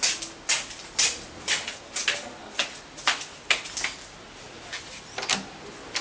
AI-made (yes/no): no